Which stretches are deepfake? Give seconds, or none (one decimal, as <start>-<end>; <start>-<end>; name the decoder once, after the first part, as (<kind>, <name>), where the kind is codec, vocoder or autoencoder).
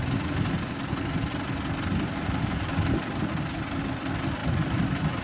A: none